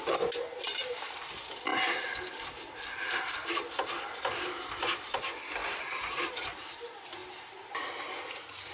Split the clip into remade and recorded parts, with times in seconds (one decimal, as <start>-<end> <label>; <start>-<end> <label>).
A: 0.0-5.6 recorded; 5.6-6.6 remade; 6.6-8.7 recorded